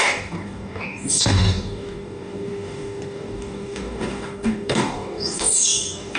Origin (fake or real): fake